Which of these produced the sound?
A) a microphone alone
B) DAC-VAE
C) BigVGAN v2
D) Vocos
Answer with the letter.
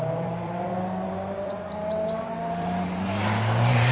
C